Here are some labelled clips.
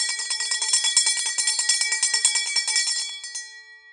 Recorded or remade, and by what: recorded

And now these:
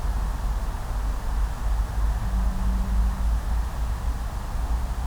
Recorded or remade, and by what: recorded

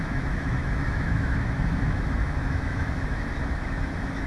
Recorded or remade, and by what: remade, autoencoder, DAC-VAE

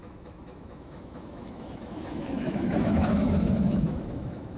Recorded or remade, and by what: remade, autoencoder, DAC-VAE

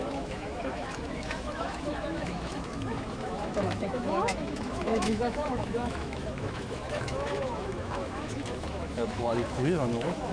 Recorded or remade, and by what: remade, autoencoder, DAC-VAE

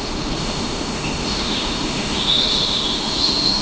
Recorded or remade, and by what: remade, autoencoder, DAC-VAE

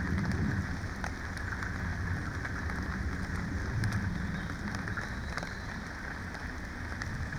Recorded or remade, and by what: recorded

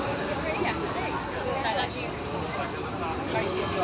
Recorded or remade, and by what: recorded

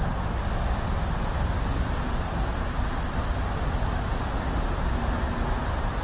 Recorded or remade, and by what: recorded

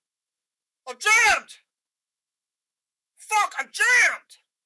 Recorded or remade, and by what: remade, autoencoder, DAC-VAE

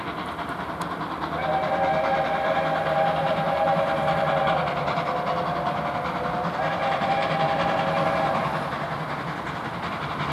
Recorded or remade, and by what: recorded